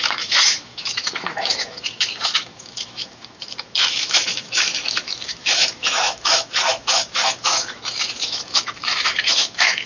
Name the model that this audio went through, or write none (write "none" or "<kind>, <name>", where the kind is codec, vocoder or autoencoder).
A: autoencoder, DAC-VAE